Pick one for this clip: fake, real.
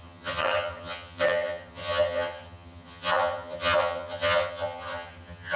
fake